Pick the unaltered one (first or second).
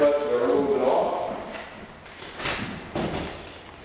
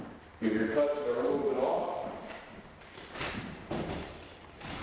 first